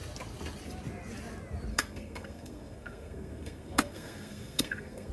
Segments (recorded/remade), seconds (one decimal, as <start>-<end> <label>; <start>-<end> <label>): 0.0-1.7 recorded; 1.7-5.1 remade